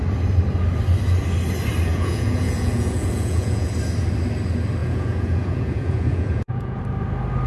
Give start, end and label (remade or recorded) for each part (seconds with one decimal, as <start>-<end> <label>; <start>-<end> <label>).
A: 0.0-1.9 recorded; 1.9-3.7 remade; 3.7-4.8 recorded; 4.8-6.8 remade; 6.8-7.5 recorded